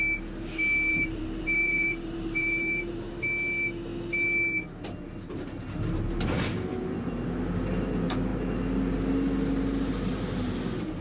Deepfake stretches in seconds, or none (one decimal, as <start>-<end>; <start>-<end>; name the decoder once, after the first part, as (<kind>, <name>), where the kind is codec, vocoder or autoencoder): 0.9-3.1 (vocoder, BigVGAN v2)